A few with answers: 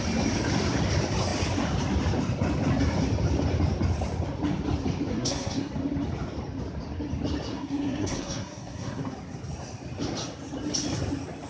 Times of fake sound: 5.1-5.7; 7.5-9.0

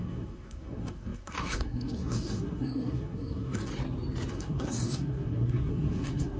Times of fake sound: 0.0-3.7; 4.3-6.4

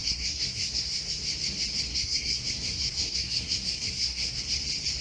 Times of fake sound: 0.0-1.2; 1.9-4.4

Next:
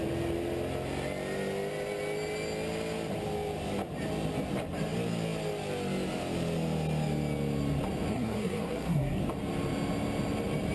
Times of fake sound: 8.1-9.2